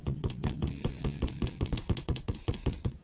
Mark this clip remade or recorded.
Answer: remade